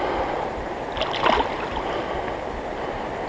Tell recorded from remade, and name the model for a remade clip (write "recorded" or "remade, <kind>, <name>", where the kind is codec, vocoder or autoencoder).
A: recorded